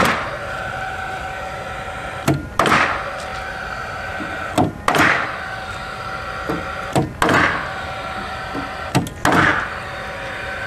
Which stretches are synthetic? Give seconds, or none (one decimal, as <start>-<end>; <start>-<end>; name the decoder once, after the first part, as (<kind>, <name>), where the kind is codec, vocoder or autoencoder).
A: none